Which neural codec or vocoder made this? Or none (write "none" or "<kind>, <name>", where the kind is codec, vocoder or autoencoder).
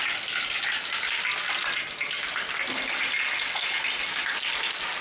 none